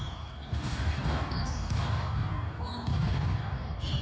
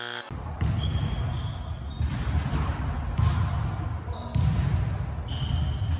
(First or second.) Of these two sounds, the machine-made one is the first